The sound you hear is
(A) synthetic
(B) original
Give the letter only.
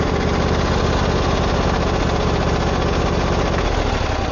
B